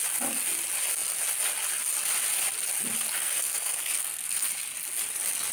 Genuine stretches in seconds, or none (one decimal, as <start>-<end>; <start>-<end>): 0.0-3.2; 4.5-5.5